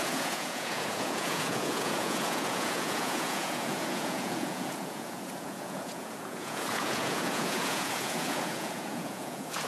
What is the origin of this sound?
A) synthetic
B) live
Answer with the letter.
A